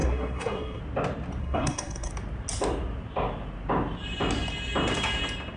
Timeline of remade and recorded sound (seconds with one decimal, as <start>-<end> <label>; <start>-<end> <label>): 0.0-0.8 remade; 0.8-1.4 recorded; 1.4-2.1 remade; 2.1-5.6 recorded